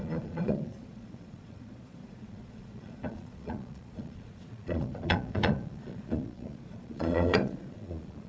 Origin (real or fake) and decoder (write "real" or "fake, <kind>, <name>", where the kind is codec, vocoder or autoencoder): fake, vocoder, Vocos